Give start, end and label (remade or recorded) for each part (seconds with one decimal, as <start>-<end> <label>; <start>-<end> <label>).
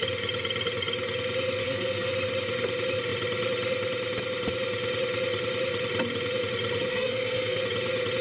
0.0-1.6 recorded; 1.6-2.1 remade; 2.1-6.9 recorded; 6.9-7.6 remade; 7.6-8.2 recorded